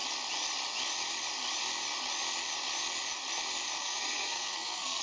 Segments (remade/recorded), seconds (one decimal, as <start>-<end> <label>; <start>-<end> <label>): 0.0-3.8 recorded; 3.8-5.0 remade